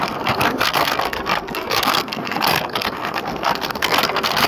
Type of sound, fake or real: fake